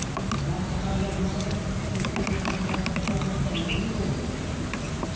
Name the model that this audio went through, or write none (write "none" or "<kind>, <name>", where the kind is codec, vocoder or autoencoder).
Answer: none